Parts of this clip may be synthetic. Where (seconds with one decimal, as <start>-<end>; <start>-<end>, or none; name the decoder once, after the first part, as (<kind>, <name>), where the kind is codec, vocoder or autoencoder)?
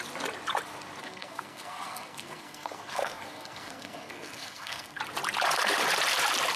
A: 1.0-5.0 (codec, SNAC)